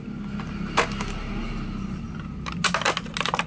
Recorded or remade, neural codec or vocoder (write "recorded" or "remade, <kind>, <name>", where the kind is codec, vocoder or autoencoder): recorded